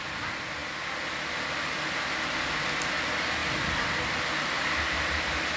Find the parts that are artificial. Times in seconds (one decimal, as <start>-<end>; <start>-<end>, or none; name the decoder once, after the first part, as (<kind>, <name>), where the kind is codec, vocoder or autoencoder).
none